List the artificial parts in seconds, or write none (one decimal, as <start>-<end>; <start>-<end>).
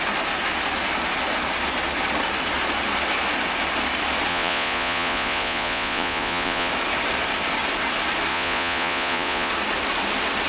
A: 4.3-6.7; 8.3-9.5